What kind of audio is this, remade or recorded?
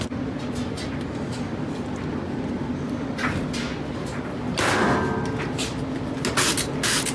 recorded